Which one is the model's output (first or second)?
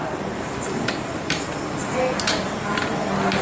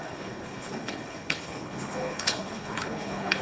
second